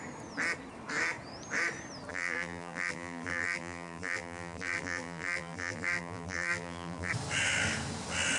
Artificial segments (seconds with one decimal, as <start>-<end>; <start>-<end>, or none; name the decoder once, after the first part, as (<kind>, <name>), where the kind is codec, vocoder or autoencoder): 2.1-7.1 (vocoder, BigVGAN v2)